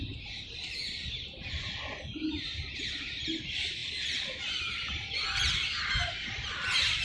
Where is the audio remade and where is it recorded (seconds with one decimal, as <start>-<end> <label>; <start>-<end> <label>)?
0.0-7.0 recorded